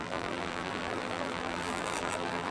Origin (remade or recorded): remade